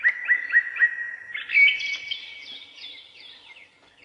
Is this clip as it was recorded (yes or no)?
yes